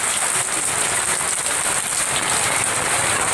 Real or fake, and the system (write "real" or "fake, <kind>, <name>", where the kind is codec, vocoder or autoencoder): real